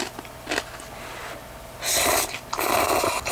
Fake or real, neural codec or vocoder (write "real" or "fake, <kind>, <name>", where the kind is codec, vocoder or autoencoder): real